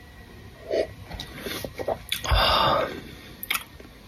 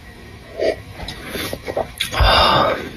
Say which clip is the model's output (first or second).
second